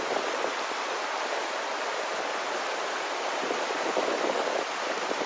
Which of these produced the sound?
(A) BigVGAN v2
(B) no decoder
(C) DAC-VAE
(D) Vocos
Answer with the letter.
B